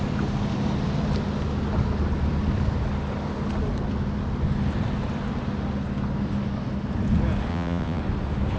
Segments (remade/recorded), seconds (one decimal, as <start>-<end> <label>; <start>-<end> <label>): 0.0-7.5 recorded; 7.5-8.0 remade; 8.0-8.6 recorded